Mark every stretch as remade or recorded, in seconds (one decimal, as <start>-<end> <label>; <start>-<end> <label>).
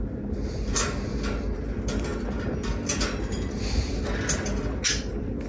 0.0-5.5 recorded